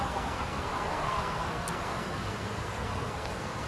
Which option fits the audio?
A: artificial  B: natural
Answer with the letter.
A